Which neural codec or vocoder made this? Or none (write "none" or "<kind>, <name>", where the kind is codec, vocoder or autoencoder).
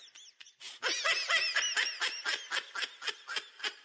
none